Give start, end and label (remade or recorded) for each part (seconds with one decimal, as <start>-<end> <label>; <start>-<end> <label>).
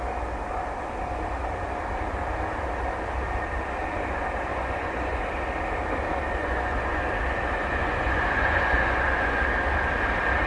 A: 0.0-4.5 recorded; 4.5-5.2 remade; 5.2-6.4 recorded; 6.4-7.0 remade; 7.0-7.7 recorded; 7.7-9.4 remade; 9.4-10.5 recorded